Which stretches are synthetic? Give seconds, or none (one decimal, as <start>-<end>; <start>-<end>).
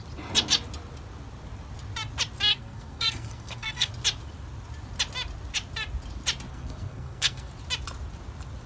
2.5-3.9; 6.5-7.5